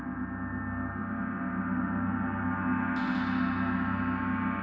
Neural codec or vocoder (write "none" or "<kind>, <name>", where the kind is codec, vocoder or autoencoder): none